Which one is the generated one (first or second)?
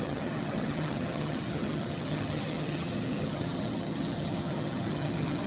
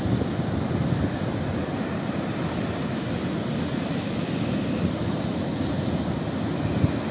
first